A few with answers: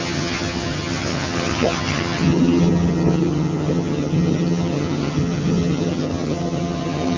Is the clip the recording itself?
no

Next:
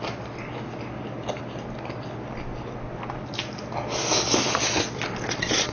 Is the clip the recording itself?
yes